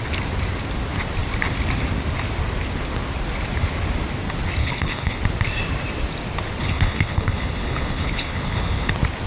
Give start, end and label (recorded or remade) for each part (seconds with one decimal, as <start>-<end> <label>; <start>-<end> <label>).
0.0-4.6 recorded; 4.6-5.2 remade; 5.2-6.6 recorded; 6.6-8.9 remade; 8.9-9.3 recorded